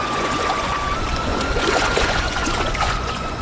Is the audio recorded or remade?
remade